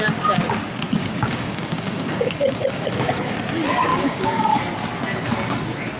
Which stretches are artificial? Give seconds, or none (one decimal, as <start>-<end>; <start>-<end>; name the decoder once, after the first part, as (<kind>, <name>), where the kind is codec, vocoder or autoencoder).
1.0-3.3 (codec, DAC); 3.9-4.6